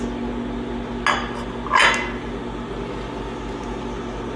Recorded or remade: recorded